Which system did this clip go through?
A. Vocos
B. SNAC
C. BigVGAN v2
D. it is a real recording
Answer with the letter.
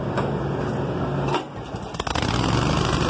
D